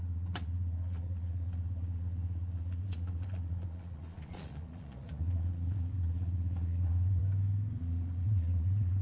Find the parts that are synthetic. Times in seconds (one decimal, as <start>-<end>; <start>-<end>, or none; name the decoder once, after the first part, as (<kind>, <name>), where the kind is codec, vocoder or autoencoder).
0.0-7.2 (vocoder, Vocos); 7.8-9.0